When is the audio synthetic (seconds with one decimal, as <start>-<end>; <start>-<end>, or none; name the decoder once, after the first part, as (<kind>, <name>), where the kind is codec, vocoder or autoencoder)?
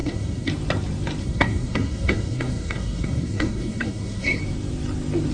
0.0-0.5 (codec, SNAC); 1.2-4.4